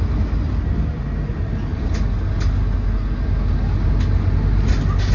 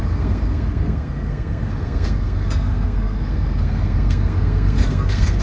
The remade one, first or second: second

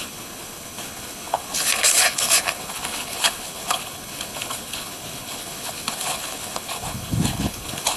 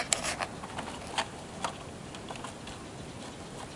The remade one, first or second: first